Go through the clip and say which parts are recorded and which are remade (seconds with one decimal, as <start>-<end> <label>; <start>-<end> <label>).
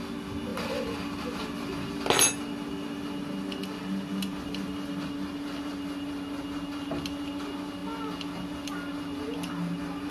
0.0-10.1 recorded